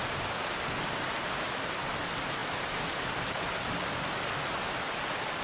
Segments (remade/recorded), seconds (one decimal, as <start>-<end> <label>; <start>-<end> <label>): 0.0-5.4 recorded